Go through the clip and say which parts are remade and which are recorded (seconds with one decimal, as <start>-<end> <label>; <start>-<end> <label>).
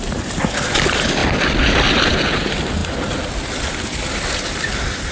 0.0-5.1 recorded